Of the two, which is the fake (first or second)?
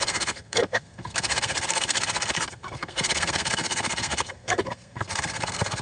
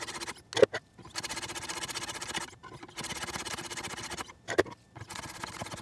first